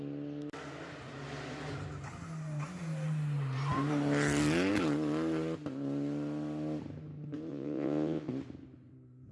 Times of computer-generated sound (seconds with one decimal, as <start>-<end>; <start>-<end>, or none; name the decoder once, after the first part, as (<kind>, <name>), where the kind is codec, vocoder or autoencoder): 7.5-8.3 (vocoder, Vocos)